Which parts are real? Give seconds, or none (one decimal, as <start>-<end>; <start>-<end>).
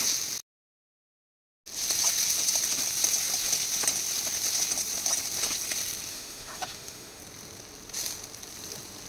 0.0-6.1; 7.2-9.1